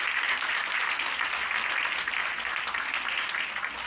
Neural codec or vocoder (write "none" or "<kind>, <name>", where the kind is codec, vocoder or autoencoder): none